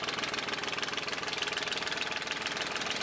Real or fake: real